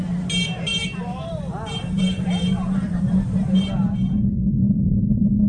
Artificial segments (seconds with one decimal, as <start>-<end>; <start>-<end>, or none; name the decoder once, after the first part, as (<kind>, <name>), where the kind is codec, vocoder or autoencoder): 0.7-3.7 (vocoder, BigVGAN v2)